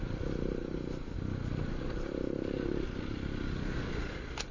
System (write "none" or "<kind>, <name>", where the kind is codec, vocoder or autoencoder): none